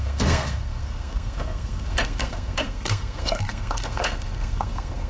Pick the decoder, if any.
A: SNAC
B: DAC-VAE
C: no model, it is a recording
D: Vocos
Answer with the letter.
A